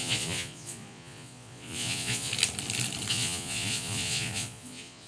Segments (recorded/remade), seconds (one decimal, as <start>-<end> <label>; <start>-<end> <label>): 0.0-2.3 remade; 2.3-3.1 recorded; 3.1-5.1 remade